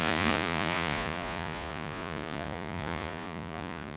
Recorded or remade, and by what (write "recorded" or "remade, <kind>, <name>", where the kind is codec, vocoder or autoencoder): remade, vocoder, Vocos